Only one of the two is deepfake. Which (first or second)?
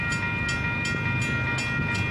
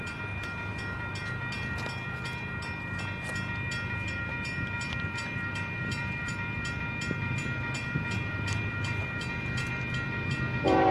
second